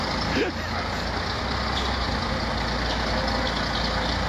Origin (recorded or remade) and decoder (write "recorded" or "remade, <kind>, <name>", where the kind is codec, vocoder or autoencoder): recorded